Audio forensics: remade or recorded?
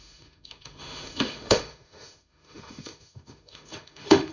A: remade